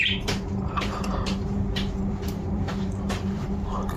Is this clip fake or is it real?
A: fake